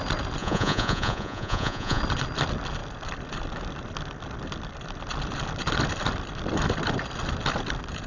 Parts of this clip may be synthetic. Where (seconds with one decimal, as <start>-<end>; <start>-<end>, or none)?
0.4-2.0